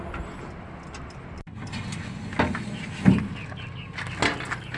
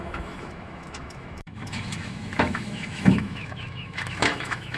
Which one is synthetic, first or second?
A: second